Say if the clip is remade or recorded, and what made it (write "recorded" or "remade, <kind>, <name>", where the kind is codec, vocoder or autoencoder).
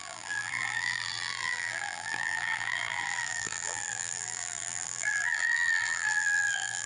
remade, vocoder, BigVGAN v2